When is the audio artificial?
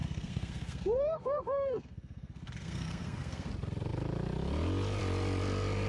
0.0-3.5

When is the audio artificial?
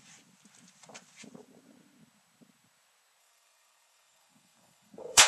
3.2-5.3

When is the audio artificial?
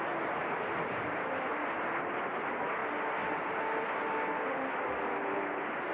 none